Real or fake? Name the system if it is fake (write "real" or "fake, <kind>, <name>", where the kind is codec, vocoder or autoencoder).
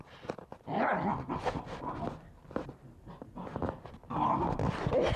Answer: real